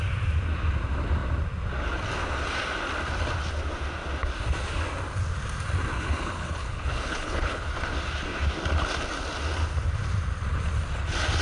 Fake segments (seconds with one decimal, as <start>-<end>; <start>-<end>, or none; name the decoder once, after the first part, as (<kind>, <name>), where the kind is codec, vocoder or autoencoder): 5.9-7.7 (codec, HILCodec)

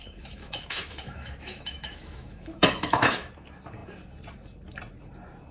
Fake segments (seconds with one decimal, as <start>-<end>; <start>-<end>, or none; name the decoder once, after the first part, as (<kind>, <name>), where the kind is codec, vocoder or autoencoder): 0.0-3.3 (autoencoder, DAC-VAE)

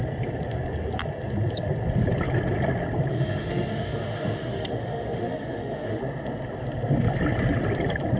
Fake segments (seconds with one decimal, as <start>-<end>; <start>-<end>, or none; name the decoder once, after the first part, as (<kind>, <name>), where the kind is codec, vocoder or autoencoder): 3.1-6.0 (autoencoder, DAC-VAE)

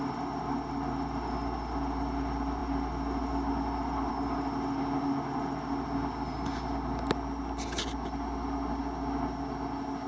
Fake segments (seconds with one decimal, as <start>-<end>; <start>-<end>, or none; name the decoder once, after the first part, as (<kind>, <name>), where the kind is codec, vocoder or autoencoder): none

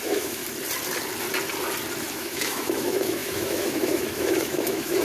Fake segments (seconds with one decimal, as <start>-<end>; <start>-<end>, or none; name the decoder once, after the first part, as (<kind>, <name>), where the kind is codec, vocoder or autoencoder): 0.0-0.4 (autoencoder, DAC-VAE); 2.1-5.0

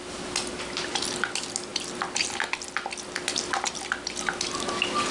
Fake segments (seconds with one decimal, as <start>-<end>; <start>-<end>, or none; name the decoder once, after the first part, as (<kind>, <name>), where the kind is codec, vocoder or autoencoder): none

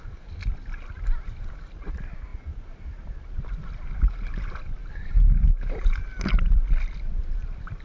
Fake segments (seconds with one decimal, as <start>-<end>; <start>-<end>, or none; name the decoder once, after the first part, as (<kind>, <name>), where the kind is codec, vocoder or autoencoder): none